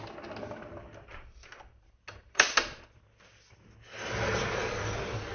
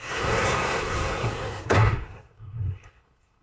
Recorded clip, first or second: first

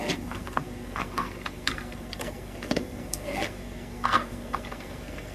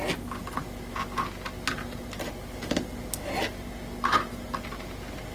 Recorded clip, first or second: second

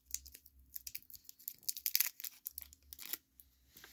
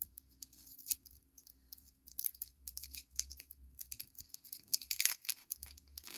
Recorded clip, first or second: first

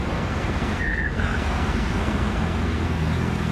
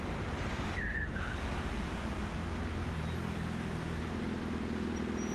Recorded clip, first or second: second